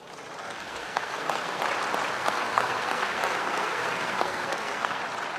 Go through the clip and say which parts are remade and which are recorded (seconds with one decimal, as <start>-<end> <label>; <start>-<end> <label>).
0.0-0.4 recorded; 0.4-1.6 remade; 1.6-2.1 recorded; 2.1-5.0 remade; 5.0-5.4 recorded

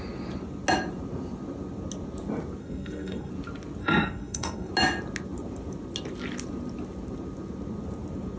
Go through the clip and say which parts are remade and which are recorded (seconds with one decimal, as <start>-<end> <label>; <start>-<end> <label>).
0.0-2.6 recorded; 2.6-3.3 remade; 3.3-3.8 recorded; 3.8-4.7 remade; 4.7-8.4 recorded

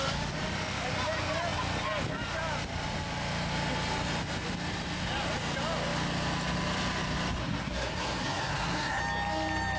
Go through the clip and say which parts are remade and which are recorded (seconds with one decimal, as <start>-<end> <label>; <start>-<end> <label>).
0.0-7.4 recorded; 7.4-9.0 remade; 9.0-9.8 recorded

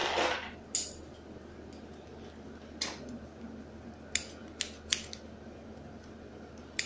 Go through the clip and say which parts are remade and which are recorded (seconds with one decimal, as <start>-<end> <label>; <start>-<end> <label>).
0.0-6.9 recorded

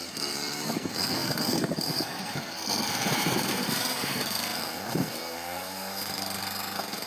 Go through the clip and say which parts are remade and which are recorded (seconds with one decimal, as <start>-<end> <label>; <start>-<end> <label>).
0.0-7.1 remade

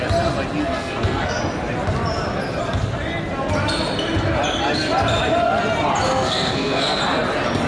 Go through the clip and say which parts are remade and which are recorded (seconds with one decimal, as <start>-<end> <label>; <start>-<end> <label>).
0.0-0.6 recorded; 0.6-1.4 remade; 1.4-6.1 recorded; 6.1-7.0 remade; 7.0-7.7 recorded